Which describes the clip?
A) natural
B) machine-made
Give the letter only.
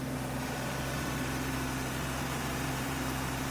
B